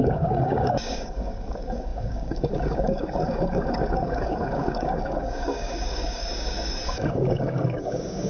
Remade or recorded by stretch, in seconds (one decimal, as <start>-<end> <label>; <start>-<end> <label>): 0.0-8.3 remade